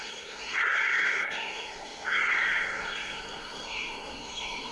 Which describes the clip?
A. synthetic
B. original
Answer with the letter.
A